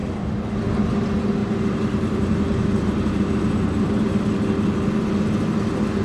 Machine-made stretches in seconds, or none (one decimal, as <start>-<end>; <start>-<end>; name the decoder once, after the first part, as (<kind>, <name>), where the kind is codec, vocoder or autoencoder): 1.4-4.2 (vocoder, BigVGAN v2)